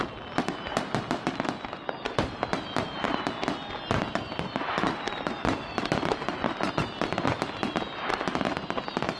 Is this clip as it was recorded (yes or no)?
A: yes